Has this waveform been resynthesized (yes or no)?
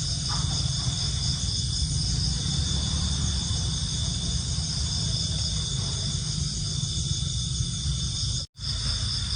no